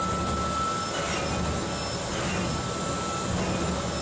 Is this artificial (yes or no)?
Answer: no